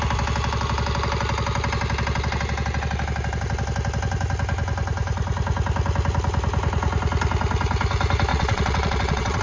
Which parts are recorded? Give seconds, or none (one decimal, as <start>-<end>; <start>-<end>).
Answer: 0.0-8.3